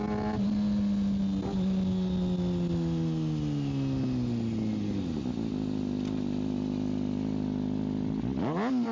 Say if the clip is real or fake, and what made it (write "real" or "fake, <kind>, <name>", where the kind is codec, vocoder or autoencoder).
real